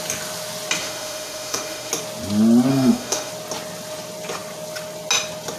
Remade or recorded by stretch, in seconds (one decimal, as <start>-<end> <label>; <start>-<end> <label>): 0.0-0.8 recorded; 0.8-1.9 remade; 1.9-2.7 recorded; 2.7-3.3 remade; 3.3-5.6 recorded